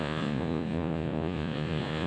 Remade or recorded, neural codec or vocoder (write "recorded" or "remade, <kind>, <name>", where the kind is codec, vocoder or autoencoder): remade, vocoder, Vocos